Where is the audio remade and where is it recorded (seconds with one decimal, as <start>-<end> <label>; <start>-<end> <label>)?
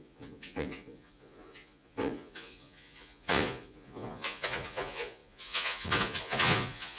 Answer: 0.0-7.0 remade